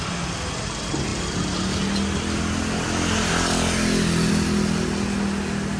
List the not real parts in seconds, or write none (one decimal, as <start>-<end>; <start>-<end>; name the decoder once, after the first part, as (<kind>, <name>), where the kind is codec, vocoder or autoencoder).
none

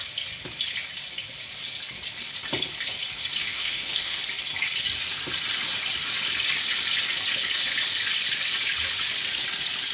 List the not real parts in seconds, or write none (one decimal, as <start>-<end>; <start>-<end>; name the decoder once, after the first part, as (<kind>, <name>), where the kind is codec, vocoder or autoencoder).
3.4-4.2 (autoencoder, DAC-VAE)

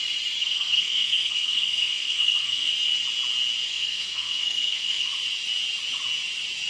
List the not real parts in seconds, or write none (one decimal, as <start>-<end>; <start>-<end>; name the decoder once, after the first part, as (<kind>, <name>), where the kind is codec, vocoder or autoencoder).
0.4-2.7 (codec, SNAC); 3.7-5.1

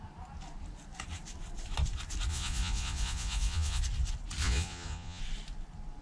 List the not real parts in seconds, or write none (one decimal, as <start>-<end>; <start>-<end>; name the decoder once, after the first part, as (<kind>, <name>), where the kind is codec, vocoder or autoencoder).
2.3-3.8 (vocoder, Vocos); 4.4-5.2

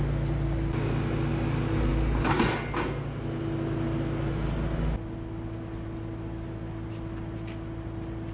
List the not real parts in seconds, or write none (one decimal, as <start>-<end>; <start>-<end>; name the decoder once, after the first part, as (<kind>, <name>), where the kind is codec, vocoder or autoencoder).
none

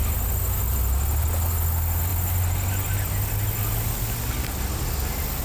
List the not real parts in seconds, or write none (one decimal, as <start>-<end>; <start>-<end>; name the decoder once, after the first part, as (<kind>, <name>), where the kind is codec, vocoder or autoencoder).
none

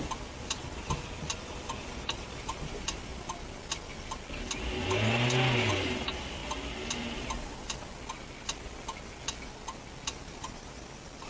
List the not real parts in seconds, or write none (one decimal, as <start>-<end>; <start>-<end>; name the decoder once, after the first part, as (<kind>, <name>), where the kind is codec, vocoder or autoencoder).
0.0-3.1 (vocoder, BigVGAN v2); 5.7-6.4; 10.2-11.3